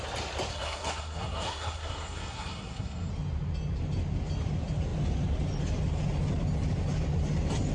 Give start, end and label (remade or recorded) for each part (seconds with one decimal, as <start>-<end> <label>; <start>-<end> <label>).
0.0-0.5 recorded; 0.5-3.1 remade; 3.1-7.7 recorded